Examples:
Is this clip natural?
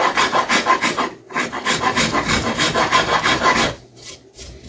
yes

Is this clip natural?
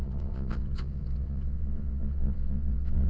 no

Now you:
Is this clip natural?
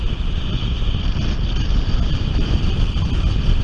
yes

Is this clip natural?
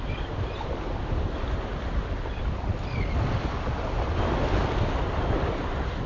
yes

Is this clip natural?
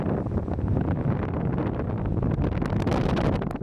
yes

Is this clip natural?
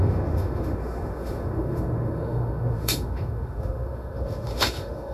no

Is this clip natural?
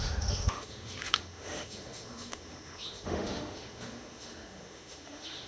no